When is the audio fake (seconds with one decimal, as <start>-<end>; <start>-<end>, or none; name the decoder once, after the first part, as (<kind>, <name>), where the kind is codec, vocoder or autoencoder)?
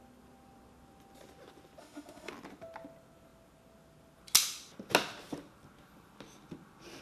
1.8-2.3 (autoencoder, DAC-VAE)